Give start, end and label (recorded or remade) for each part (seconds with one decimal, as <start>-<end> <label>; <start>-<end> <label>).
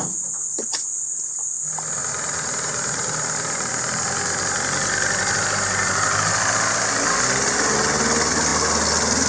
0.0-2.0 recorded; 2.0-3.7 remade; 3.7-9.3 recorded